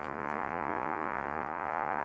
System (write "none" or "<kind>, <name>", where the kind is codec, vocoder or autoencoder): vocoder, Vocos